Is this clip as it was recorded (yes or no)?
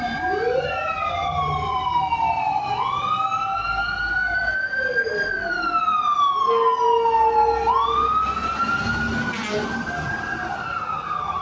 yes